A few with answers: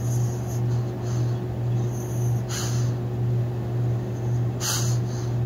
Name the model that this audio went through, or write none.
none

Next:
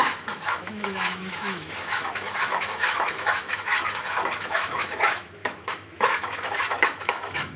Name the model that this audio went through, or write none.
autoencoder, DAC-VAE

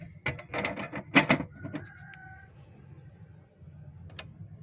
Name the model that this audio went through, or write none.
none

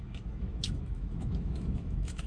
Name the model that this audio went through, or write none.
autoencoder, DAC-VAE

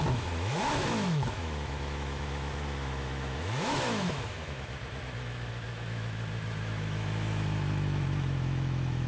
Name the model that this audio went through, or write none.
autoencoder, DAC-VAE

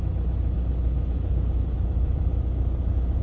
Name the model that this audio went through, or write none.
none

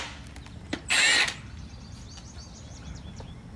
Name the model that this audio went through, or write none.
none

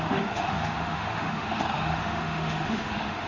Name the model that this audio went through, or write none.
autoencoder, DAC-VAE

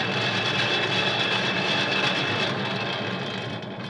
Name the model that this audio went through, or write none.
none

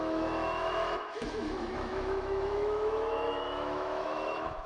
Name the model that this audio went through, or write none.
autoencoder, DAC-VAE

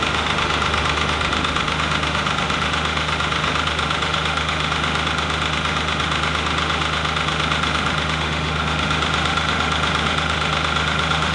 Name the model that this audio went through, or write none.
autoencoder, DAC-VAE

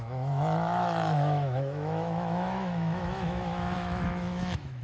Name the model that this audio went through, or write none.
autoencoder, DAC-VAE